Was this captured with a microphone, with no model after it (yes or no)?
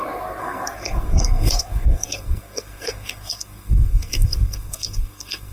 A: no